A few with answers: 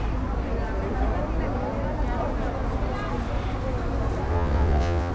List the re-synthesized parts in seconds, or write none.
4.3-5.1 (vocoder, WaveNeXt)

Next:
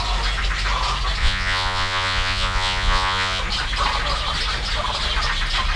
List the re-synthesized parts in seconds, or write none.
1.2-3.4 (vocoder, Vocos)

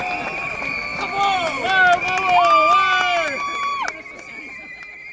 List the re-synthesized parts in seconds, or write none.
none

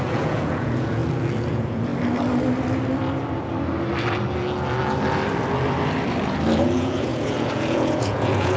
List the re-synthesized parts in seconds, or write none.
0.0-1.0 (vocoder, Vocos); 1.5-1.9; 6.6-8.6

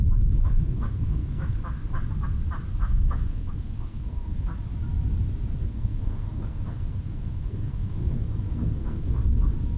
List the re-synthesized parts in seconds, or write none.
0.4-1.6 (codec, SNAC); 2.8-4.5; 5.6-9.2

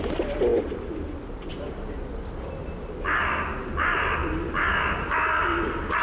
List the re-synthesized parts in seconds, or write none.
none

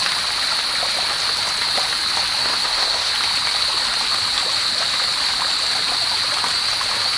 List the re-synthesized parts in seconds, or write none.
2.4-3.1 (codec, SNAC)